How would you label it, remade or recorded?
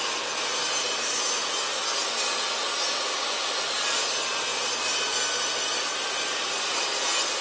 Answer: recorded